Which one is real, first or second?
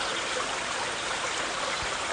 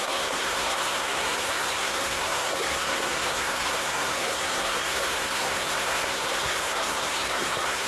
first